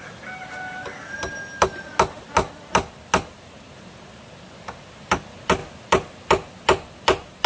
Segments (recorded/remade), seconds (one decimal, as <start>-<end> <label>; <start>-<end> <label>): 0.0-7.5 recorded